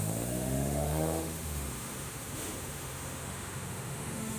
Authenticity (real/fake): fake